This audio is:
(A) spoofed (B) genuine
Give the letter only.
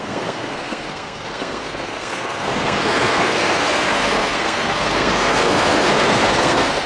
A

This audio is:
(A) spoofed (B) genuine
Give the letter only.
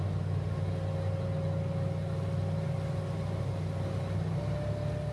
B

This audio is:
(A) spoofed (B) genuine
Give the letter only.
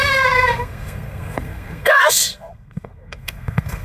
A